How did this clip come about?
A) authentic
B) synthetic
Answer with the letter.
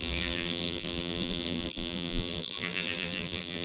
B